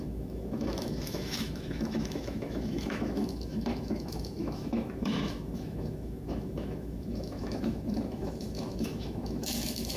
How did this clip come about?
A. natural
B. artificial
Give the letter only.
B